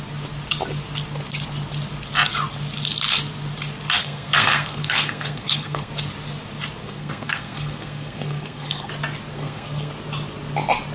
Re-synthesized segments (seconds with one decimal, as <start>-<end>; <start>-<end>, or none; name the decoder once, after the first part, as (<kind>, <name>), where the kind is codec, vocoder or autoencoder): 4.0-5.9 (codec, SNAC); 6.8-8.9; 9.3-9.9